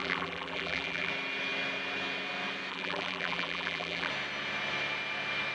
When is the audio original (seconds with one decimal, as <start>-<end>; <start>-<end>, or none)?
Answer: 1.1-2.7; 4.1-5.5